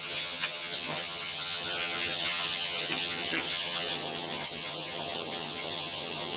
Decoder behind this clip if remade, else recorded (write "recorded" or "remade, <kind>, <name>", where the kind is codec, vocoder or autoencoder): remade, vocoder, HiFi-GAN